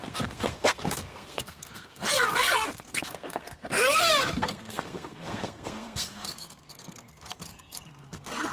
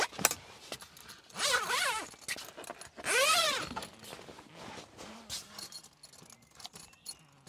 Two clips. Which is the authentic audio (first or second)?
second